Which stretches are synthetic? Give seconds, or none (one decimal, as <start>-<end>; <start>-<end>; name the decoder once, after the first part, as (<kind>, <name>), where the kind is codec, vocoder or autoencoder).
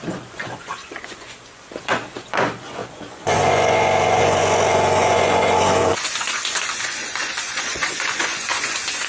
0.0-9.1 (vocoder, Vocos)